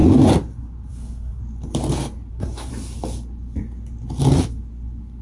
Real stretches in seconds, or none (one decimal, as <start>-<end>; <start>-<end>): 0.0-0.9; 1.4-2.3; 2.7-5.2